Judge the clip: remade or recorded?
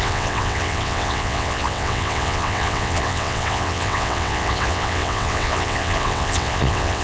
remade